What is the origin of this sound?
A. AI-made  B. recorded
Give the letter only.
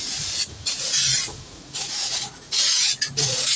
A